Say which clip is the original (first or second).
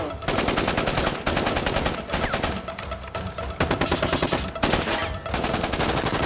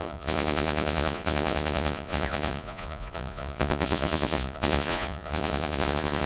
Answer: first